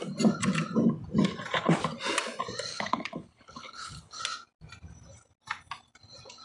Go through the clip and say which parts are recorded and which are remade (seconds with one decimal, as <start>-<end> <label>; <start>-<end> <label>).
0.0-2.7 recorded; 2.7-4.2 remade; 4.2-6.4 recorded